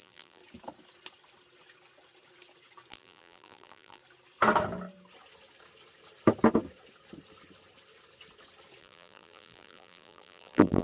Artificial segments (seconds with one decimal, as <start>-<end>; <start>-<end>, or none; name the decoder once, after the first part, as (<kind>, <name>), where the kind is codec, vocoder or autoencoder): 0.0-0.4 (vocoder, BigVGAN v2); 2.9-4.0; 8.8-10.8